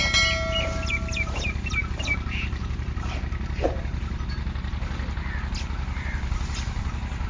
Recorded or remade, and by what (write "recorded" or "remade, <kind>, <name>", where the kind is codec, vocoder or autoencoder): recorded